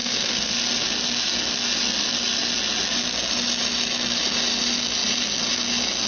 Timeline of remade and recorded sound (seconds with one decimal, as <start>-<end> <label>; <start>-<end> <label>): 0.0-0.5 remade; 0.5-6.1 recorded